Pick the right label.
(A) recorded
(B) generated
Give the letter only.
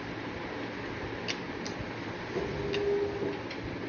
A